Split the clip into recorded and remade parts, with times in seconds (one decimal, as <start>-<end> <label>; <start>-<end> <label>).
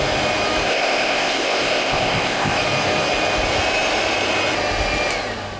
0.0-0.7 recorded; 0.7-2.6 remade; 2.6-5.6 recorded